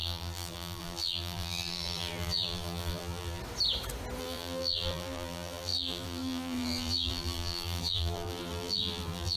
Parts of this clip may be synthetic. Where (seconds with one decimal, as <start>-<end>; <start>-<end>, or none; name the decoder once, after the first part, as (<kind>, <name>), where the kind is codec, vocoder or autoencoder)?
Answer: 0.0-3.4 (vocoder, BigVGAN v2); 4.2-9.4